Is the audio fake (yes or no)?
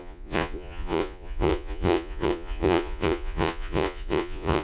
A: yes